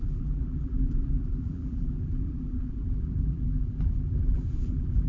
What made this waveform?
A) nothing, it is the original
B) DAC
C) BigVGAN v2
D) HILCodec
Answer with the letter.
C